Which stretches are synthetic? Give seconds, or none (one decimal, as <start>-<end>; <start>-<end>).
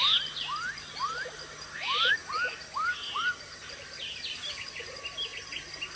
none